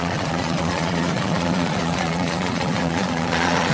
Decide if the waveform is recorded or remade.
remade